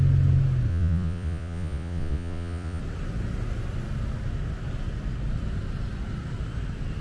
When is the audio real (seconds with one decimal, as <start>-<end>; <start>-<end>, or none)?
0.0-0.7; 2.8-7.0